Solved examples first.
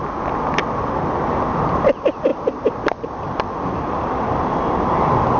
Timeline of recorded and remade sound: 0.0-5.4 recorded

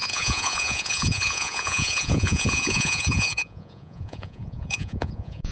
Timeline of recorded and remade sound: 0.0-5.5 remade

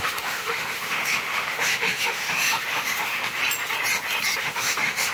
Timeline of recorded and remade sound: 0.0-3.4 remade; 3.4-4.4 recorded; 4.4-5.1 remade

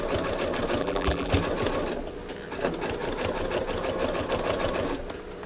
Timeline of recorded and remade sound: 0.0-0.8 recorded; 0.8-1.3 remade; 1.3-5.5 recorded